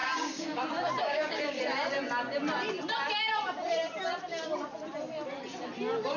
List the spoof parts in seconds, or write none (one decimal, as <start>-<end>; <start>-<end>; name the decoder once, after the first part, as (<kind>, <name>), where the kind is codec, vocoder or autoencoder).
0.0-0.6 (codec, DAC); 1.0-1.6